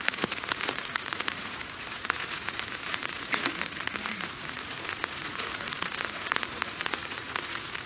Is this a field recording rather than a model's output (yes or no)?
no